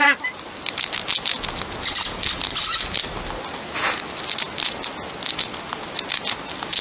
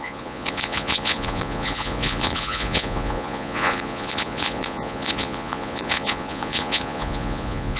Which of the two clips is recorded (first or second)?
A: first